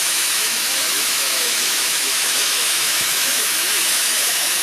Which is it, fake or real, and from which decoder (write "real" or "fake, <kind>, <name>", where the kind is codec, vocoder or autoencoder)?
fake, autoencoder, DAC-VAE